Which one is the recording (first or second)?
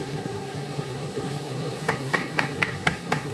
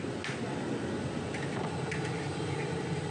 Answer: second